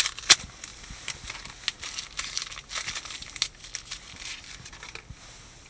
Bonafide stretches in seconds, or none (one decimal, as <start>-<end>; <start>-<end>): 0.0-5.7